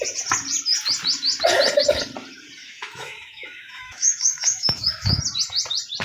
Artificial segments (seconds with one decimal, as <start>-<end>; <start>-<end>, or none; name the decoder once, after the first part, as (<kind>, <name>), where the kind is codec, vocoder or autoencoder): 2.6-5.2 (autoencoder, DAC-VAE)